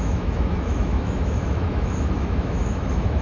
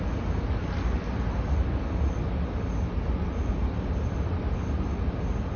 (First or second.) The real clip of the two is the second